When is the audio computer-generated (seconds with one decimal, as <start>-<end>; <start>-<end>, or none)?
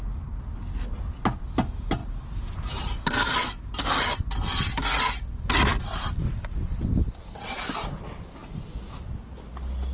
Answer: none